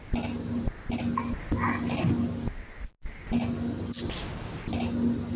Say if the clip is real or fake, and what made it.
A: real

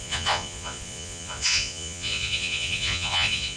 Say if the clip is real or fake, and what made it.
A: fake, vocoder, Vocos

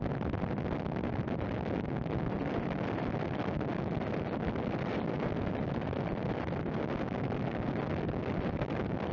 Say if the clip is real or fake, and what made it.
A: real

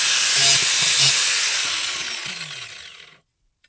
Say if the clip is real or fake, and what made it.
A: real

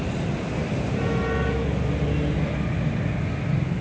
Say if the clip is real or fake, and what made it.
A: real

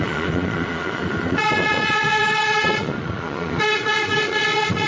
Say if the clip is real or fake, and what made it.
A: fake, vocoder, Vocos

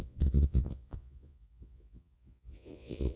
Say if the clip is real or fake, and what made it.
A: fake, vocoder, Vocos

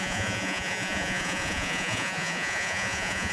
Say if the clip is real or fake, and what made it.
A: fake, vocoder, Vocos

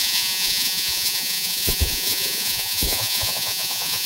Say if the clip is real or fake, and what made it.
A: fake, vocoder, Vocos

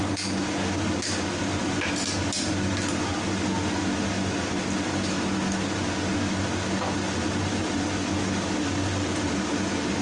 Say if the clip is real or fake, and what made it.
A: real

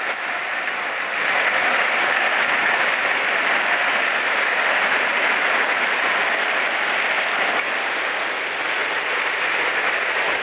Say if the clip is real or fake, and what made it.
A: real